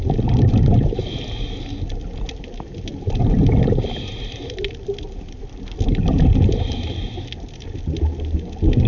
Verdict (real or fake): real